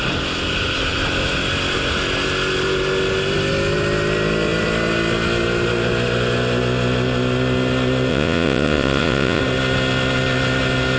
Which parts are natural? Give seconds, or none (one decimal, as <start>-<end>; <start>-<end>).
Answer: 0.0-8.1; 9.4-11.0